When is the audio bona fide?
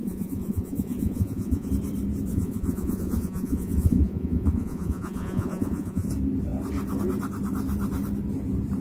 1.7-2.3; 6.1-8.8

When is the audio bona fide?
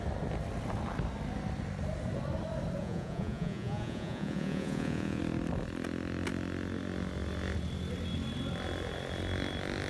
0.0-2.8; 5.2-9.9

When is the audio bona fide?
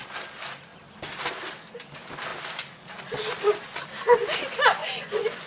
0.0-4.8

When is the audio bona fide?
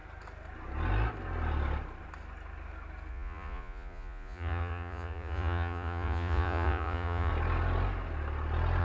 0.0-3.1; 7.3-8.8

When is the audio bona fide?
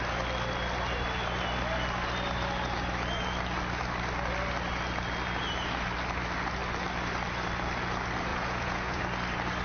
0.0-8.3; 9.0-9.6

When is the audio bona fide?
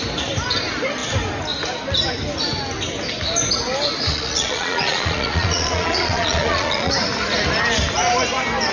0.0-4.1; 6.9-8.7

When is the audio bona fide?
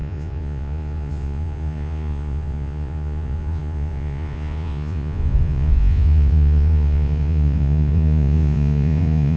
none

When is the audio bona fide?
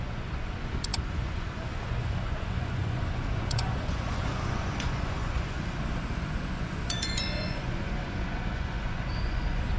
none